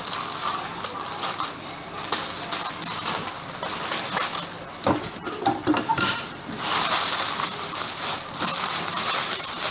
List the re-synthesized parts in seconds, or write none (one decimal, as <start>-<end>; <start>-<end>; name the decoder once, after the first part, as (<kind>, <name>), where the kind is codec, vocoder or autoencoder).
5.9-6.6 (vocoder, BigVGAN v2)